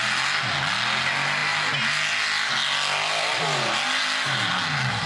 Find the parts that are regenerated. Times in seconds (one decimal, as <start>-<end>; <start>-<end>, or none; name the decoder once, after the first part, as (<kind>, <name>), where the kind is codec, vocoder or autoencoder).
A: none